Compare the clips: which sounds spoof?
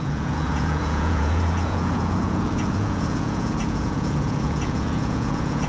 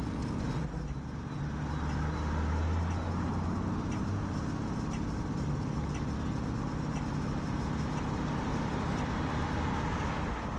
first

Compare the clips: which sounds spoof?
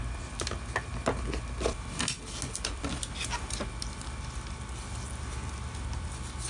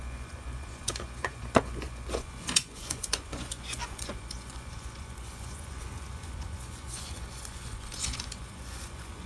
second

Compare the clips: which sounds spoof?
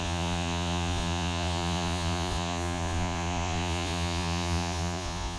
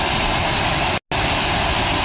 first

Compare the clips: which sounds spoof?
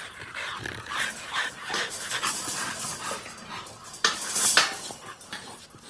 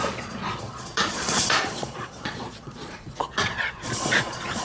second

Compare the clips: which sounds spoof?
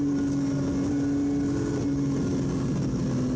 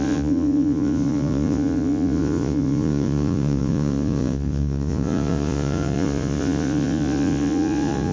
second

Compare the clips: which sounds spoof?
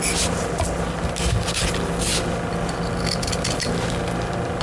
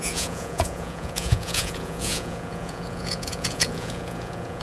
second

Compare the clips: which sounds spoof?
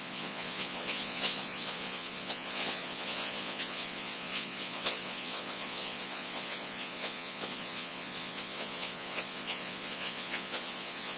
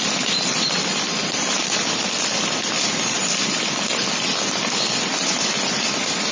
first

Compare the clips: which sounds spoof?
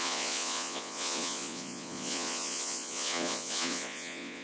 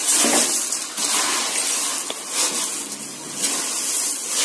first